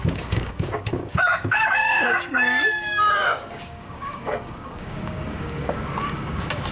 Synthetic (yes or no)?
yes